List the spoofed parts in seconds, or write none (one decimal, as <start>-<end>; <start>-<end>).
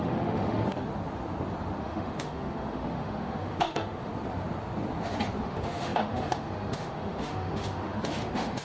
0.0-0.9; 1.8-4.1; 5.4-8.6